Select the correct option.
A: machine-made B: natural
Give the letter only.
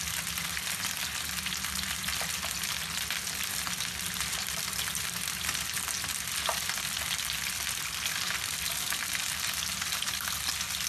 B